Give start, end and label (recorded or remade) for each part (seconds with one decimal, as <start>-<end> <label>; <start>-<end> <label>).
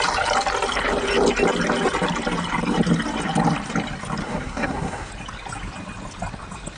0.0-4.2 recorded; 4.2-5.1 remade; 5.1-6.8 recorded